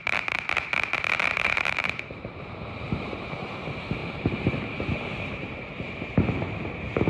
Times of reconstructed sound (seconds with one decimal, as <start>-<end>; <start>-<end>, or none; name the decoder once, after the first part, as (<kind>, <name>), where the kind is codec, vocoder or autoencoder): 0.0-3.5 (vocoder, BigVGAN v2); 4.0-6.2